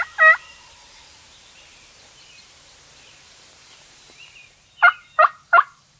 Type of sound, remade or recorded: remade